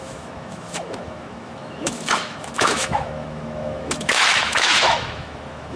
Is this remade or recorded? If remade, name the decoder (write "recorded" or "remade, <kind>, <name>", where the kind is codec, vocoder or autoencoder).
remade, autoencoder, DAC-VAE